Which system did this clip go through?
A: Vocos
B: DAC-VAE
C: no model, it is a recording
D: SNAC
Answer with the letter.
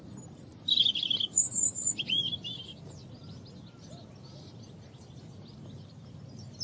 C